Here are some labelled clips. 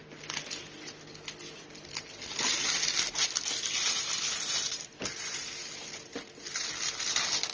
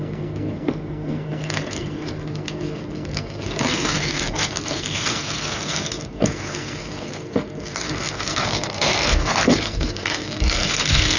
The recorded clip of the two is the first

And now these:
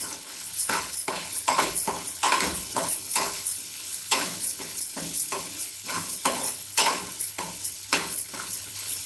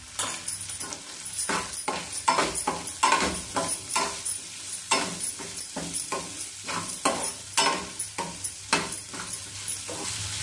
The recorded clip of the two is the second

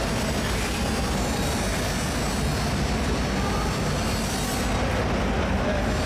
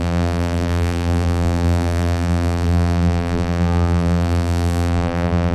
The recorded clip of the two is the first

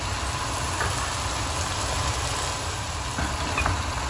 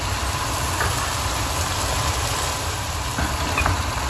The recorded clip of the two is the first